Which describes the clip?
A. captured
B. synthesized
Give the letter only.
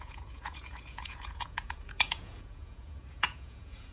B